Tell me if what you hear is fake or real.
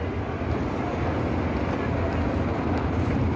real